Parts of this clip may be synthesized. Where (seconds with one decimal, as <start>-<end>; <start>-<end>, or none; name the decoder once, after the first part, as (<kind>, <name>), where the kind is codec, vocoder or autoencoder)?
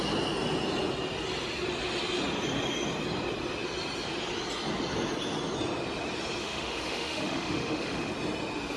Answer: 6.4-8.1 (autoencoder, DAC-VAE)